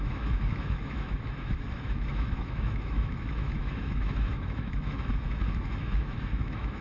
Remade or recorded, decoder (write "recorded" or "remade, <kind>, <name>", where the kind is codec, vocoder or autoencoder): remade, autoencoder, DAC-VAE